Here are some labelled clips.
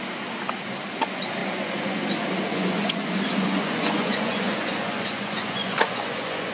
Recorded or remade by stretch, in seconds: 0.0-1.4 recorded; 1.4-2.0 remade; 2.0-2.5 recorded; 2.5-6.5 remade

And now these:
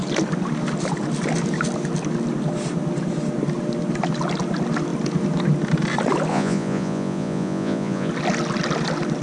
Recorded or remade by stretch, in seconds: 0.0-6.3 recorded; 6.3-8.1 remade; 8.1-9.2 recorded